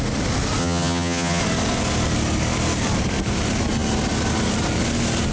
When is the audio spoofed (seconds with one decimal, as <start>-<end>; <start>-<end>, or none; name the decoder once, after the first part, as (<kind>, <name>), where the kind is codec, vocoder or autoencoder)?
0.6-1.4 (vocoder, HiFi-GAN)